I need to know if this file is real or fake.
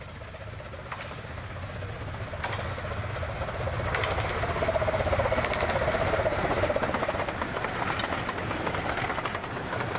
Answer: real